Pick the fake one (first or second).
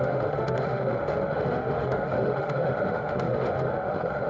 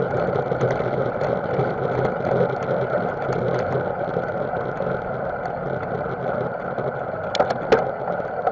first